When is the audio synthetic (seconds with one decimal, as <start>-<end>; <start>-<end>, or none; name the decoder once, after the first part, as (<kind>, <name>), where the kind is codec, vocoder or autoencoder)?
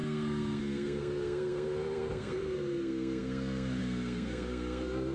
0.0-5.1 (codec, SNAC)